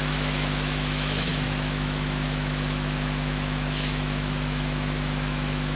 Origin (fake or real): fake